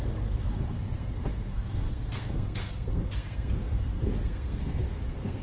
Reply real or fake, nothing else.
fake